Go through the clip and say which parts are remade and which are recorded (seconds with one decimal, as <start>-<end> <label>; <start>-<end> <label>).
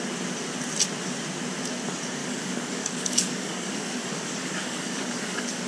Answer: 0.0-2.2 recorded; 2.2-5.7 remade